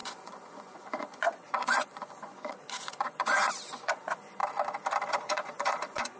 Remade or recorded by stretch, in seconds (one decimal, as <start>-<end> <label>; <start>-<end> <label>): 0.0-4.4 remade; 4.4-5.1 recorded; 5.1-6.2 remade